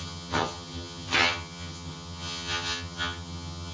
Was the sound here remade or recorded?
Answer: remade